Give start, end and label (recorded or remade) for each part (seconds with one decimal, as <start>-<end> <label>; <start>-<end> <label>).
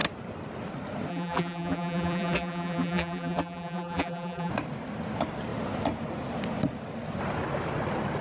0.0-1.1 recorded; 1.1-4.5 remade; 4.5-8.2 recorded